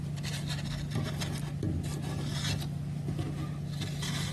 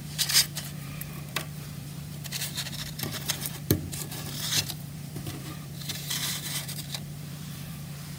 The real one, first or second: first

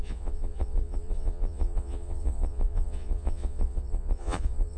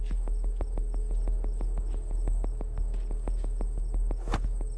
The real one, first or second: second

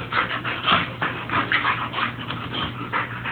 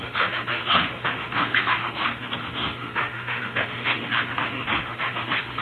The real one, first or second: first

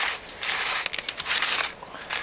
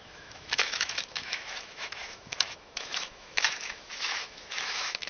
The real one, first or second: first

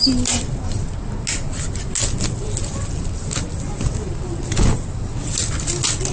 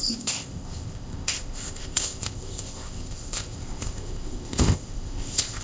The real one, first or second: first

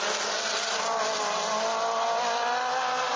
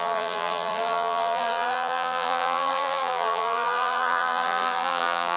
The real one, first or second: first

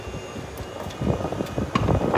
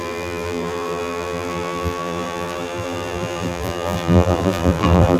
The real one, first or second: first